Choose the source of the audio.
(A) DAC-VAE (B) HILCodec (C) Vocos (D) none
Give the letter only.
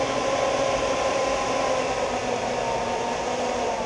D